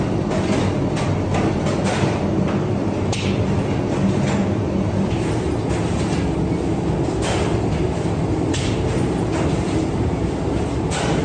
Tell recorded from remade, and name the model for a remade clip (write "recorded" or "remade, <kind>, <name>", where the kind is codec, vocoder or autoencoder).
recorded